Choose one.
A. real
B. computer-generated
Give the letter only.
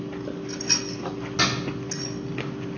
A